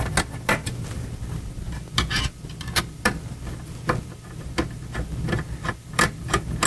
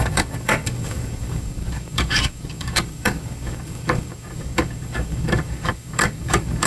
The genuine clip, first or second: first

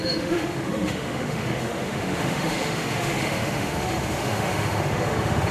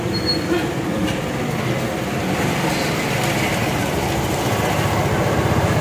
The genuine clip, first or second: second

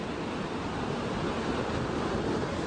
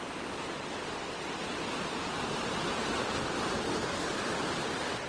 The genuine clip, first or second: first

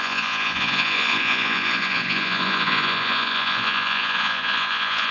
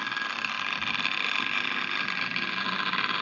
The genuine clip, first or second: second